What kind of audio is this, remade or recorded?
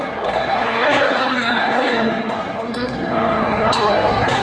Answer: remade